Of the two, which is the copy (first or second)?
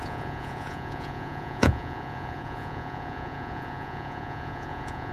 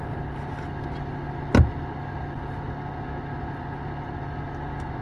first